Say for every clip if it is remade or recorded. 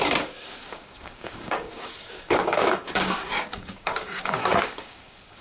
remade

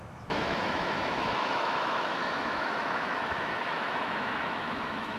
remade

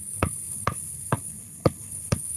remade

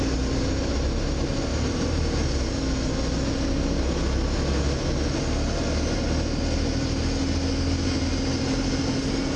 recorded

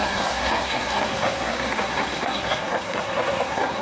remade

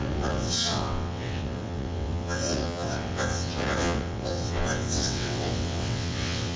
remade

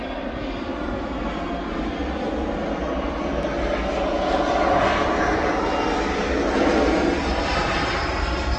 recorded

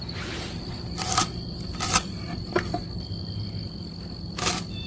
recorded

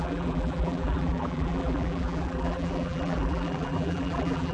remade